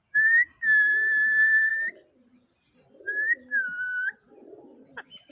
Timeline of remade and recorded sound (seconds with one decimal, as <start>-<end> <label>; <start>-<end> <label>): 0.0-5.3 recorded